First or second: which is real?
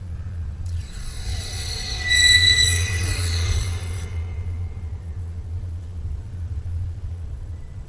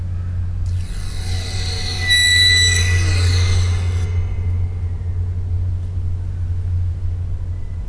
second